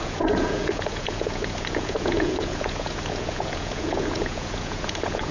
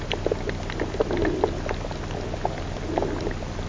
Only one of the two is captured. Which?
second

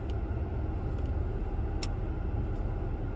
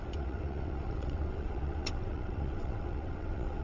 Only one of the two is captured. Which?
first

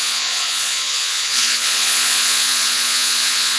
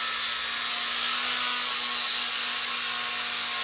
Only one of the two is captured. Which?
second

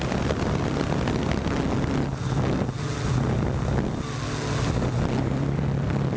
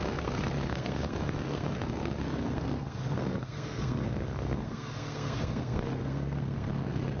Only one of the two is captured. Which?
first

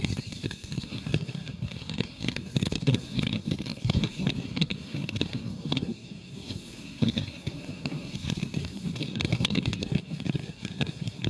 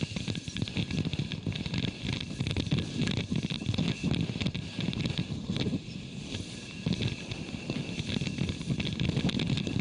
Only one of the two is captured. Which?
second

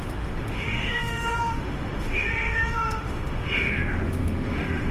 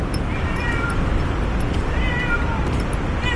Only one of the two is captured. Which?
second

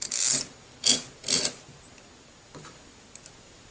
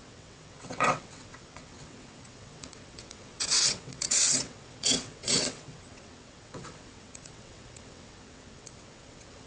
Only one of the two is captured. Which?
first